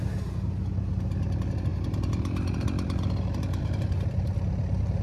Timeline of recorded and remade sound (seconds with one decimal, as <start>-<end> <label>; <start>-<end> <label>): 0.0-1.7 recorded; 1.7-5.0 remade